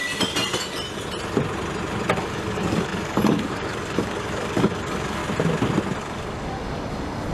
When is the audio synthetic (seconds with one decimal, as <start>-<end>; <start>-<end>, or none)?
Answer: 2.2-5.2; 6.0-7.3